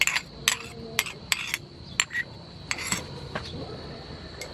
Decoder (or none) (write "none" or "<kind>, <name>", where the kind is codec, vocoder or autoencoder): none